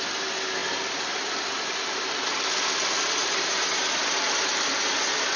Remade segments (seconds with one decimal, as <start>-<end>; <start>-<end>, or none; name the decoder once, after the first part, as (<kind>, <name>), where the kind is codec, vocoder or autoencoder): none